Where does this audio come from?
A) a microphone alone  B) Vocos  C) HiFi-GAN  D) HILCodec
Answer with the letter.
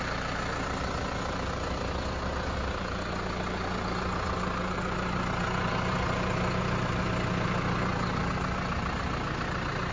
A